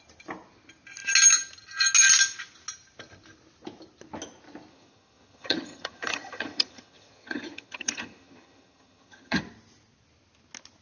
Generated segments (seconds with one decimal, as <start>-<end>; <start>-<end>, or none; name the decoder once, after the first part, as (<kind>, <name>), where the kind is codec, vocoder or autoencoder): 4.7-9.4 (vocoder, HiFi-GAN)